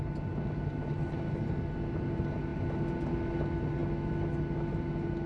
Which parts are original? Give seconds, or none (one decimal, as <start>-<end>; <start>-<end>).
0.0-5.3